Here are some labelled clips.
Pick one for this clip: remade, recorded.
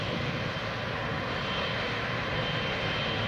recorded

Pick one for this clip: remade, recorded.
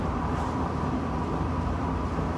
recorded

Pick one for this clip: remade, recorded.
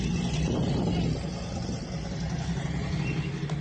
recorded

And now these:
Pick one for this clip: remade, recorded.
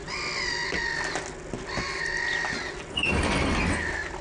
recorded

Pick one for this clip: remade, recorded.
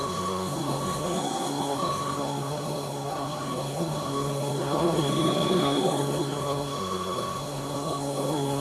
remade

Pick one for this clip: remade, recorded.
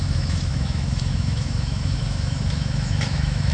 remade